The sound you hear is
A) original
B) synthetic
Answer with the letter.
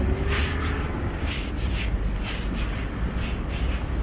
A